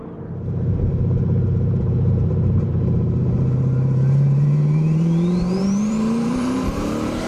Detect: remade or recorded remade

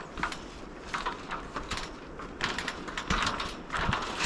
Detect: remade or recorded recorded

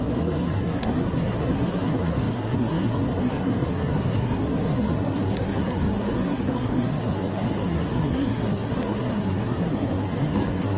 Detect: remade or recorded remade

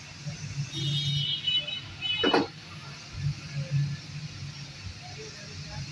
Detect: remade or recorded recorded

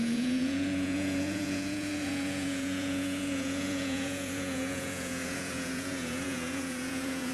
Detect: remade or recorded remade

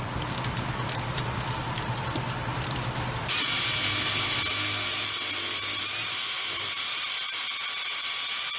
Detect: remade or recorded recorded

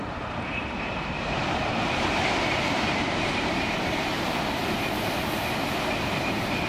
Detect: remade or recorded remade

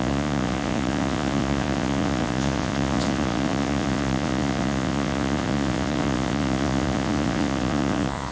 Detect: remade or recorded remade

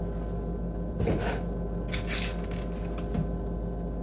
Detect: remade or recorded recorded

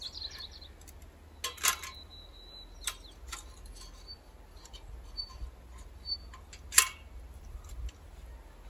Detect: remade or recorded recorded